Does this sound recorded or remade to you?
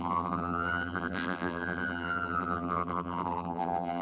remade